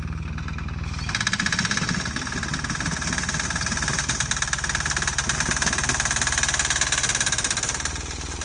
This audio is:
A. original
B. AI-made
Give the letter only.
A